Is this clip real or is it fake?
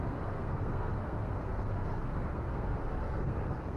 fake